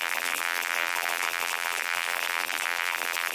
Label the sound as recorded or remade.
remade